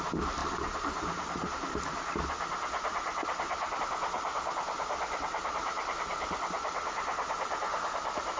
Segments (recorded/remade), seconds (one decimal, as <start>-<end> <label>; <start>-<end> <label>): 0.0-8.4 recorded